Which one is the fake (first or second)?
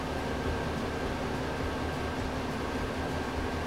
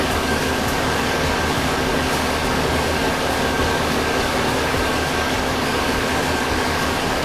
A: second